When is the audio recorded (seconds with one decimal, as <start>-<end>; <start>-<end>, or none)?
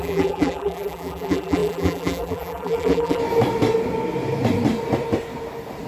3.2-5.9